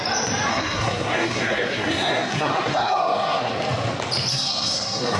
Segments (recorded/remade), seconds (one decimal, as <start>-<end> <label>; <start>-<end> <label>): 0.0-0.5 recorded; 0.5-3.5 remade; 3.5-4.3 recorded; 4.3-5.2 remade